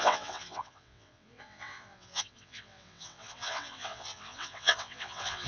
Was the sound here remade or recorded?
remade